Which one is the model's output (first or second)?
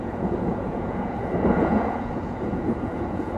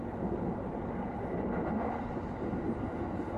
first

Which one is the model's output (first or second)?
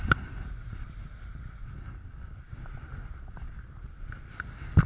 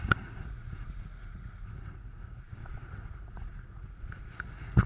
second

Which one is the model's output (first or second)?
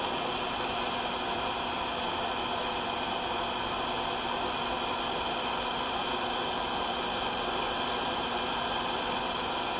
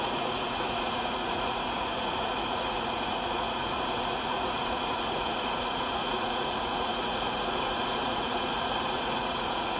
second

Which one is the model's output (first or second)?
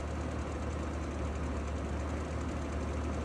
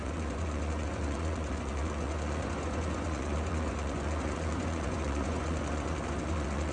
second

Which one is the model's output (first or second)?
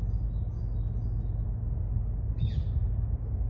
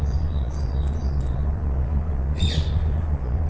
second